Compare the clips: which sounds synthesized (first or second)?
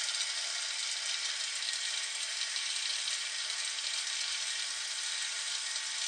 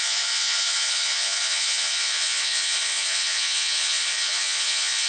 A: second